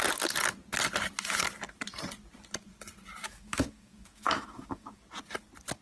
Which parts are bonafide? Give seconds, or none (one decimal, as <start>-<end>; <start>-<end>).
0.0-3.2; 5.0-5.8